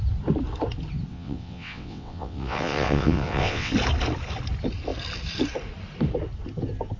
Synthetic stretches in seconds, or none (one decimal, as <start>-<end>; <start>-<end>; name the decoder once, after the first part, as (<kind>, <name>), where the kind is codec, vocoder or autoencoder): 1.1-3.7 (vocoder, WaveNeXt)